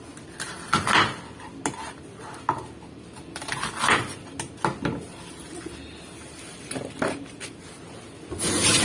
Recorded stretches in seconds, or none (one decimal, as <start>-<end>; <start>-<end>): 0.0-8.8